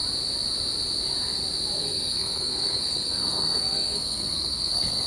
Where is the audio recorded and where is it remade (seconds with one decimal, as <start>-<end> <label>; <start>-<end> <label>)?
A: 0.0-1.8 recorded; 1.8-5.1 remade